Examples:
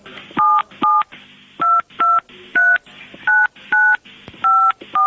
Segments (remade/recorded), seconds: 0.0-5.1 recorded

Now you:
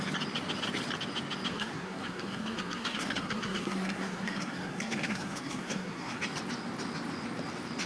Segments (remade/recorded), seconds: 0.0-1.5 recorded; 1.5-6.2 remade; 6.2-7.9 recorded